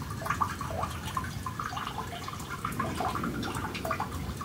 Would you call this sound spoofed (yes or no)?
no